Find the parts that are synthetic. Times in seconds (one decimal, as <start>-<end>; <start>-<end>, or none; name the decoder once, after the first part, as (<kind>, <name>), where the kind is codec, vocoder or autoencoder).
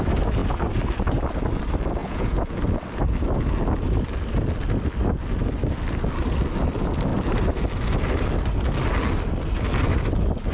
2.0-2.6 (vocoder, Vocos)